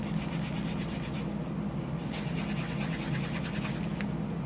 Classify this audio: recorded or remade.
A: recorded